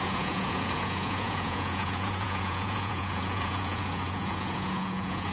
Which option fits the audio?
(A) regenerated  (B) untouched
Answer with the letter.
A